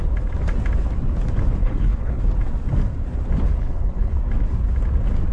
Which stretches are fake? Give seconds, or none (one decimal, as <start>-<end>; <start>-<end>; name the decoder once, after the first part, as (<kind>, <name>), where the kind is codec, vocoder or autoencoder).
1.6-2.2 (codec, HILCodec); 3.5-4.2